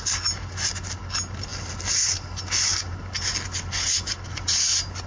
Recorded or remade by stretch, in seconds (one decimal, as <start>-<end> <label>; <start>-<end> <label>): 0.0-5.1 recorded